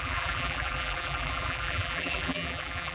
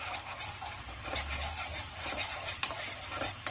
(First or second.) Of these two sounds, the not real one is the first